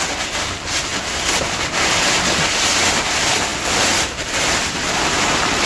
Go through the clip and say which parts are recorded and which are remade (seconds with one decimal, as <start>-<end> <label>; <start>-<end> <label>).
0.0-5.7 recorded